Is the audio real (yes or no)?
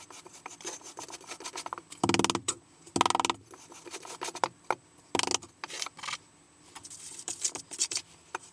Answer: yes